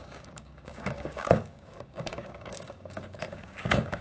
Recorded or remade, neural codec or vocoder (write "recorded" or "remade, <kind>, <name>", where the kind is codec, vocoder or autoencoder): remade, codec, DAC